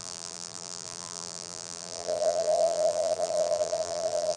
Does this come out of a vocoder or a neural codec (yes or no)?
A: yes